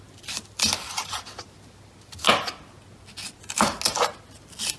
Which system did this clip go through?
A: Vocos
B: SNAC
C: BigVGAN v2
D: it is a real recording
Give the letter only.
D